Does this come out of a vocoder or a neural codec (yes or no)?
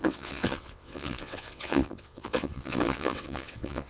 yes